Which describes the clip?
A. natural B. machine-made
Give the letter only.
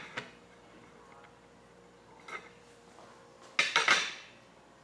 A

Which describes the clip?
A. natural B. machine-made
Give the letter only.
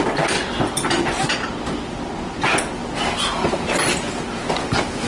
A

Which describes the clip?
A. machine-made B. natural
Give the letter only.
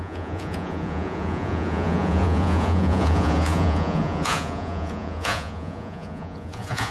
A